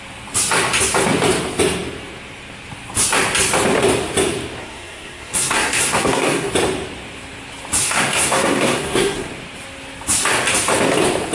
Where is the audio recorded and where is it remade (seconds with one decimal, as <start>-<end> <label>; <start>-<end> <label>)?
0.0-4.6 recorded; 4.6-6.5 remade; 6.5-7.8 recorded; 7.8-9.3 remade; 9.3-11.3 recorded